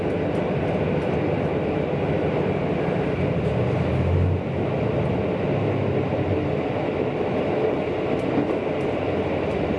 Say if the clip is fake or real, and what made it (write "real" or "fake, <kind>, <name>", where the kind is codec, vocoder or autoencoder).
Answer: real